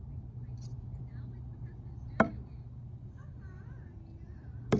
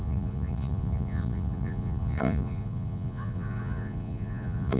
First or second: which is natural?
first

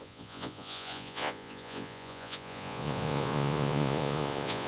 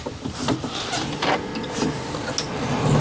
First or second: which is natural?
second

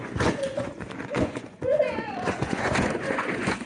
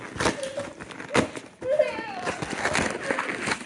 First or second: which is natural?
second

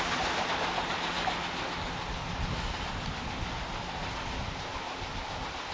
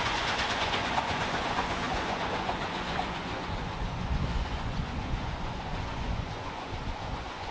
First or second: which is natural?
first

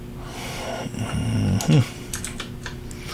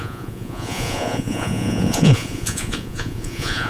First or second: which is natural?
first